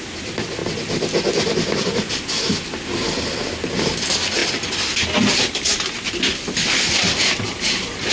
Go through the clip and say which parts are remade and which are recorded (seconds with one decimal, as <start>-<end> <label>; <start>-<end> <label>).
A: 0.0-8.1 recorded